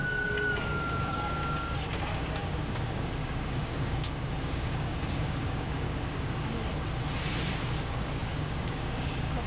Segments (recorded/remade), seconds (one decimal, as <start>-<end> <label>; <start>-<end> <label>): 0.0-0.6 recorded; 0.6-6.6 remade; 6.6-7.5 recorded; 7.5-9.5 remade